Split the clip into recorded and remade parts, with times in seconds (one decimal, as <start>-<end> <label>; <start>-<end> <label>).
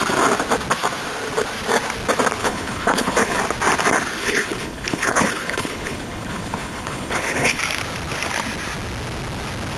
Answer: 0.0-2.4 recorded; 2.4-3.4 remade; 3.4-4.2 recorded; 4.2-7.6 remade; 7.6-9.8 recorded